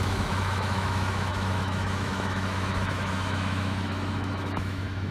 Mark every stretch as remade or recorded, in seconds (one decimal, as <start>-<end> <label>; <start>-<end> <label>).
0.0-5.1 remade